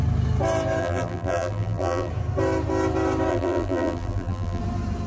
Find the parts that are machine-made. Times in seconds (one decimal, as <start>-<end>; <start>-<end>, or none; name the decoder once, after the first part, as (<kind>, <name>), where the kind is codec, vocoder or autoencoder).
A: 0.8-2.1 (vocoder, BigVGAN v2); 3.3-4.6